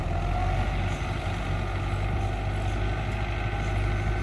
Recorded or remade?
recorded